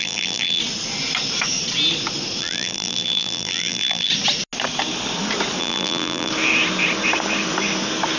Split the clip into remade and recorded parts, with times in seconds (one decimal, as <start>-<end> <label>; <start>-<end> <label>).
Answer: 0.0-0.6 remade; 0.6-2.4 recorded; 2.4-4.1 remade; 4.1-5.6 recorded; 5.6-6.3 remade; 6.3-8.2 recorded